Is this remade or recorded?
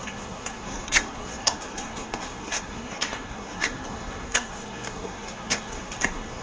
remade